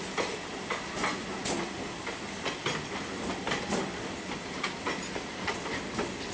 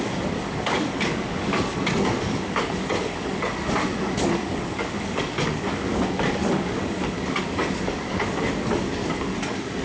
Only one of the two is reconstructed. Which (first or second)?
second